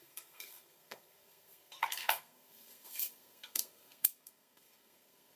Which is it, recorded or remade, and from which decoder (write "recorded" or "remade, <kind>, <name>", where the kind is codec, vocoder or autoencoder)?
remade, codec, SNAC